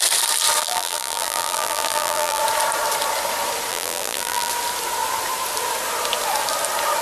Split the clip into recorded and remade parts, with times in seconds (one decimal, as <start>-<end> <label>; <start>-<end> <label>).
0.0-0.6 recorded; 0.6-2.4 remade; 2.4-3.7 recorded; 3.7-4.5 remade; 4.5-7.0 recorded